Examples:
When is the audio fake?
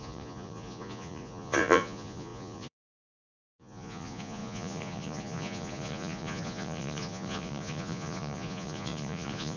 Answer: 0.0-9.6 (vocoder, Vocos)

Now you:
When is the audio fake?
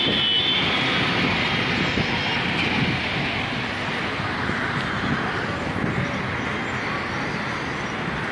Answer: none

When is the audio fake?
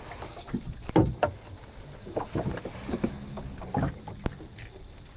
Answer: none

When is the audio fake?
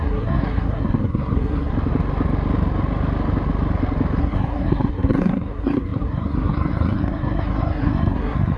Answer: 0.0-1.7 (codec, SNAC); 4.2-8.6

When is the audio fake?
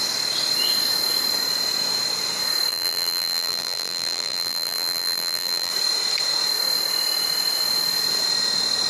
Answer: 2.7-5.7 (vocoder, BigVGAN v2)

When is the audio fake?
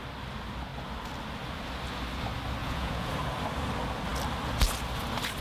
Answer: 2.6-3.1 (vocoder, Vocos)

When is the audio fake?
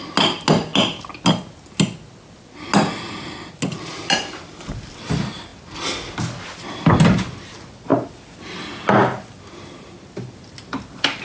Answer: none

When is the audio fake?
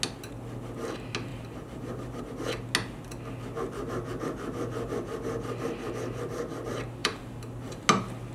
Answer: 1.3-2.2 (vocoder, BigVGAN v2); 7.0-7.8